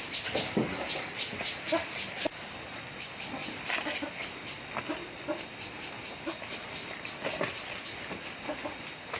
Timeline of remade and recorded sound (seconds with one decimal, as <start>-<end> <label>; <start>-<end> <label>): 0.0-9.2 recorded